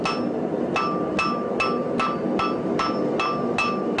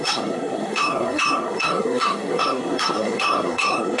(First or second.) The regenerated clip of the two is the second